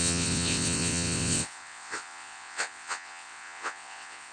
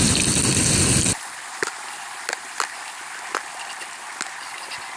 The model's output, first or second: first